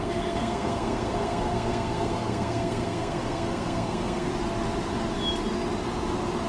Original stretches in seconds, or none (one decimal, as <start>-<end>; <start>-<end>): 4.3-6.5